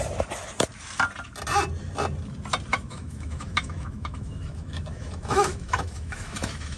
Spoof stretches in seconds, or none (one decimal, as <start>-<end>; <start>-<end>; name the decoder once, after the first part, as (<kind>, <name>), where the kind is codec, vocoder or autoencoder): 2.7-6.8 (autoencoder, DAC-VAE)